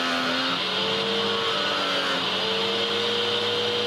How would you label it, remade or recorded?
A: recorded